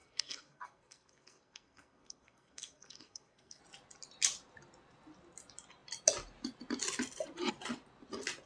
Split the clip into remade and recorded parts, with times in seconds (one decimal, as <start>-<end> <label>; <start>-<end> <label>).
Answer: 0.0-3.6 remade; 3.6-8.5 recorded